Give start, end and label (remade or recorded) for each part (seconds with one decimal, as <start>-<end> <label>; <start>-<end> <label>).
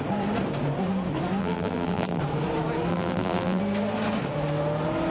0.0-1.4 recorded; 1.4-2.2 remade; 2.2-2.9 recorded; 2.9-3.6 remade; 3.6-5.1 recorded